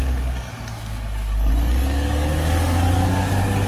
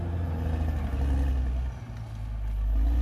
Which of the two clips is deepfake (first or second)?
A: first